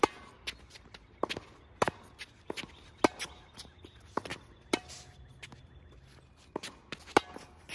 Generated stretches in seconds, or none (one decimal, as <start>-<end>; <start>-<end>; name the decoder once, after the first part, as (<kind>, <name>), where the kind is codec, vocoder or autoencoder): none